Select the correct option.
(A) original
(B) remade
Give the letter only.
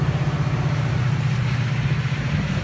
B